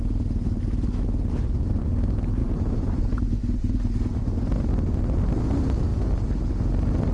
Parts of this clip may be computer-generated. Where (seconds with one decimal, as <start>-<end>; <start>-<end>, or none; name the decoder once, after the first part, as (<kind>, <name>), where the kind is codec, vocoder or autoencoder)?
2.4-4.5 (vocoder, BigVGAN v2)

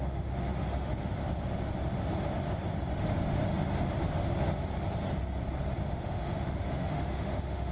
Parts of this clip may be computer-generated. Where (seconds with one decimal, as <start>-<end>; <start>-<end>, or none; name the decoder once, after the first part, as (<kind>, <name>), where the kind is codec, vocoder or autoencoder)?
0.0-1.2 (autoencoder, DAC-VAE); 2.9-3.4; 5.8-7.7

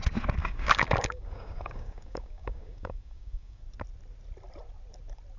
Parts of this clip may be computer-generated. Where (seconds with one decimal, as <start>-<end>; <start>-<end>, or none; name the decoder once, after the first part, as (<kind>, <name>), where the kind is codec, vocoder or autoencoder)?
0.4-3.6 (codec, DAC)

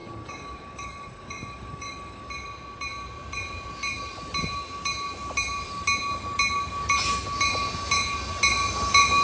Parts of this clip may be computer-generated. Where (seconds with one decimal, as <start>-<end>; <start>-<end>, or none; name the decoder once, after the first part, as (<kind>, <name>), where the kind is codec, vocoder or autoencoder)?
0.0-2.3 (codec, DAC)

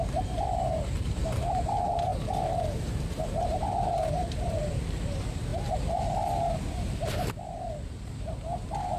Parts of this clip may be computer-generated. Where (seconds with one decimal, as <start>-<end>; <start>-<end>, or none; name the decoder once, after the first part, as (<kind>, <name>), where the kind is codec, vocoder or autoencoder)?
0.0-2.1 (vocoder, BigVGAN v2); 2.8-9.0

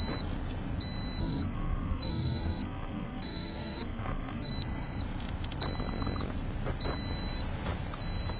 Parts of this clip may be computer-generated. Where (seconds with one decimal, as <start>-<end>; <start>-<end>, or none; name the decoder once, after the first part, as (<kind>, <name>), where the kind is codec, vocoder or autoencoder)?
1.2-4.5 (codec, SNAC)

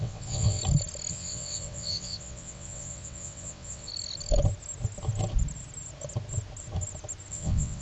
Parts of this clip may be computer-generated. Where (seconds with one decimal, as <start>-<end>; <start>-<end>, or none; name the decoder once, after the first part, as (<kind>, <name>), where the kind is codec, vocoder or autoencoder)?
0.0-0.6 (vocoder, WaveNeXt); 1.1-3.9; 7.3-7.8

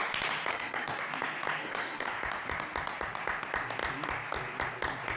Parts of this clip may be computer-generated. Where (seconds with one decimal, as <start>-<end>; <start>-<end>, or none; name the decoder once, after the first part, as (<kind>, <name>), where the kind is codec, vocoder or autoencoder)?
0.5-1.0 (codec, SNAC); 1.6-2.1